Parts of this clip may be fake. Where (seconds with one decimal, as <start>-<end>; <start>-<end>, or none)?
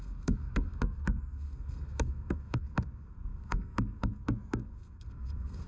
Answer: 0.0-5.7